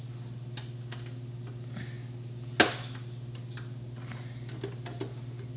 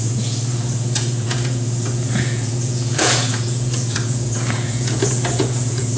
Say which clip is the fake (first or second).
second